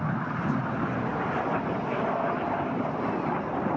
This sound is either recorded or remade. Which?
recorded